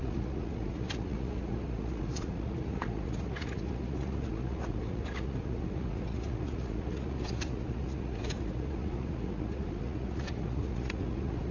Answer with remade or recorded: remade